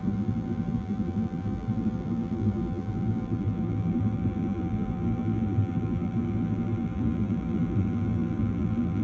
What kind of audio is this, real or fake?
fake